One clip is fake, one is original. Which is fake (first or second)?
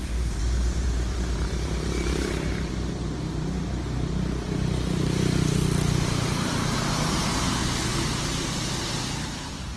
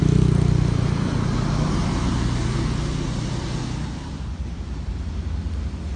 first